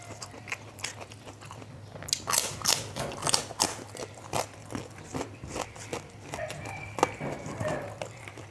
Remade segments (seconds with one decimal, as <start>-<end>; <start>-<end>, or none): none